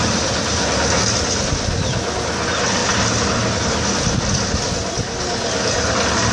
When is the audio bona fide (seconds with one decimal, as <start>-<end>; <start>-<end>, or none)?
0.0-6.3